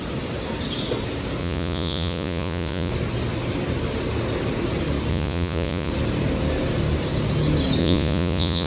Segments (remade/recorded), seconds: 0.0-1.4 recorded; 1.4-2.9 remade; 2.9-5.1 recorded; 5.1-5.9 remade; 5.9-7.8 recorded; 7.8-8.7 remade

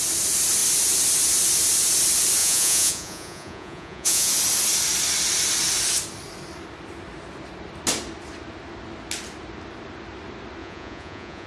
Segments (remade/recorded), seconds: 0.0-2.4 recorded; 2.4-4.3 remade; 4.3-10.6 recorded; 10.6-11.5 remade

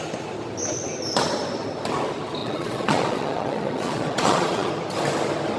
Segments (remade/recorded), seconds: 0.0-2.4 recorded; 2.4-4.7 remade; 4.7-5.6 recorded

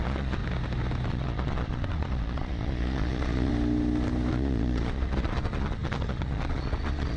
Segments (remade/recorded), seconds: 0.0-0.4 remade; 0.4-1.1 recorded; 1.1-3.5 remade; 3.5-4.3 recorded; 4.3-7.2 remade

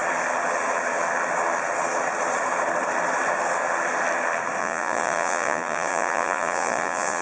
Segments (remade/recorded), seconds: 0.0-4.6 recorded; 4.6-7.2 remade

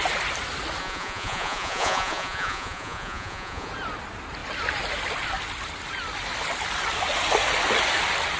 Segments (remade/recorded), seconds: 0.0-0.8 recorded; 0.8-3.7 remade; 3.7-8.4 recorded

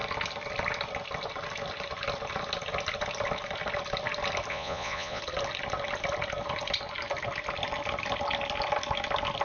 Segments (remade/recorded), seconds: 0.0-4.5 recorded; 4.5-5.2 remade; 5.2-9.4 recorded